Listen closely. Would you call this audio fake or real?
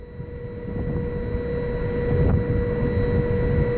real